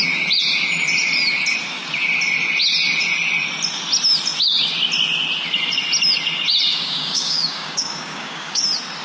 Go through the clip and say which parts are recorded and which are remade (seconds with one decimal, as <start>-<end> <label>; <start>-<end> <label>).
0.0-6.7 recorded; 6.7-8.6 remade; 8.6-9.0 recorded